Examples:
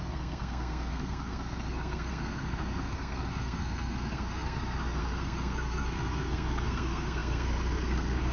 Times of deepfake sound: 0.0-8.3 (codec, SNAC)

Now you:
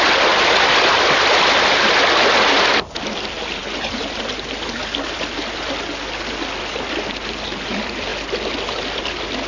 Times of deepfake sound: none

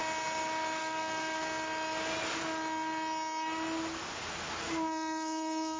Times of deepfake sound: 0.8-1.4 (codec, SNAC); 4.9-5.8